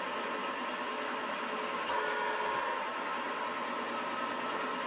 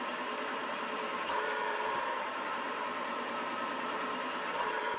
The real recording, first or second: first